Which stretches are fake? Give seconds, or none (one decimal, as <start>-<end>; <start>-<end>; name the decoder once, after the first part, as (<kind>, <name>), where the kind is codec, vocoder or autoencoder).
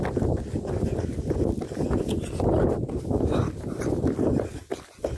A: none